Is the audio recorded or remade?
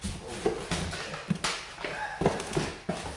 recorded